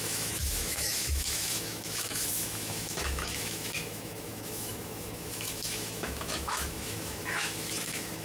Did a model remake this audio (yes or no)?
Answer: yes